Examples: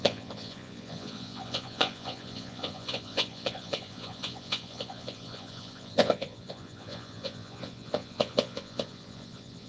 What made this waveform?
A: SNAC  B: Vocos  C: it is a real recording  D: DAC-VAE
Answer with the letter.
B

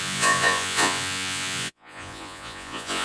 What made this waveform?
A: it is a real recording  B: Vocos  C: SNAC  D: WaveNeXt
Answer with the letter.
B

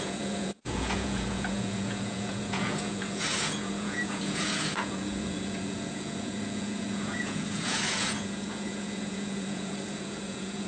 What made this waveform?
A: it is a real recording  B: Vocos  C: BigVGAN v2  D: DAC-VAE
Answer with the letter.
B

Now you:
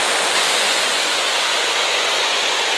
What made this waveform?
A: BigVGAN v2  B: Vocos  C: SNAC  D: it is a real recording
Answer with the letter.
B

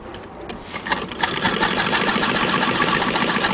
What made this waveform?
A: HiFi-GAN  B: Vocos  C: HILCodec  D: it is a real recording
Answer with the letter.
D